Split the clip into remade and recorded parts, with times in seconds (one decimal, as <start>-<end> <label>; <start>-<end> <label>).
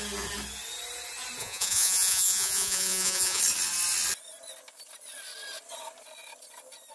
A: 0.0-1.4 recorded; 1.4-3.4 remade; 3.4-6.9 recorded